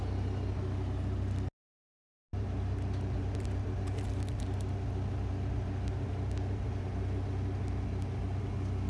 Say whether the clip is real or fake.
real